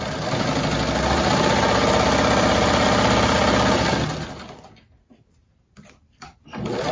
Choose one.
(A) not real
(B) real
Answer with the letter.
B